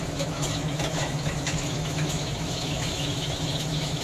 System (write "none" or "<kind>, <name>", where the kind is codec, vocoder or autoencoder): autoencoder, DAC-VAE